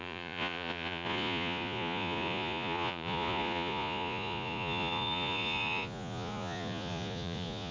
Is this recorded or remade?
remade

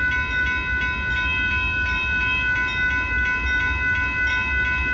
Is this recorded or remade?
recorded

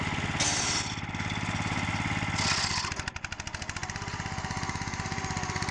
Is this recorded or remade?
recorded